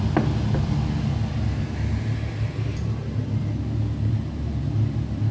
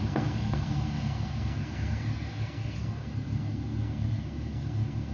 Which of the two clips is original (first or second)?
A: first